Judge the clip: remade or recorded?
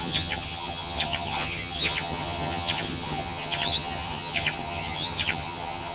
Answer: remade